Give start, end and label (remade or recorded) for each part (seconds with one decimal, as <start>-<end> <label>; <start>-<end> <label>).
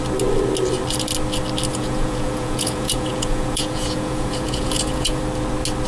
0.0-1.7 recorded; 1.7-5.2 remade; 5.2-5.9 recorded